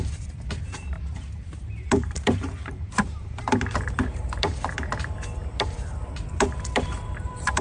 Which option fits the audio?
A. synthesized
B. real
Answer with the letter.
A